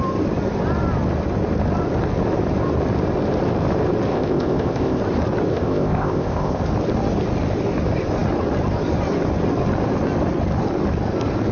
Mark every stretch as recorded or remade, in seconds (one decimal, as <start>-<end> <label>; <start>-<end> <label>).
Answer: 0.0-4.1 recorded; 4.1-5.0 remade; 5.0-5.5 recorded; 5.5-6.6 remade; 6.6-11.5 recorded